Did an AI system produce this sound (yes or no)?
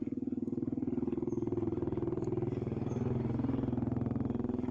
no